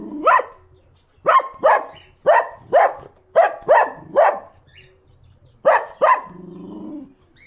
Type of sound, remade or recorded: recorded